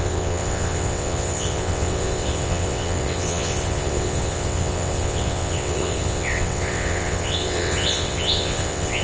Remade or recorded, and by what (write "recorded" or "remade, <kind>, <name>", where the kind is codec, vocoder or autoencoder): remade, vocoder, WaveNeXt